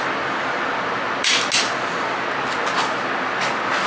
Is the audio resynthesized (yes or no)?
no